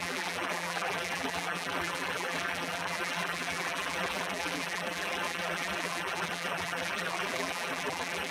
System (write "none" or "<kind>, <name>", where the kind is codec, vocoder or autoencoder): vocoder, BigVGAN v2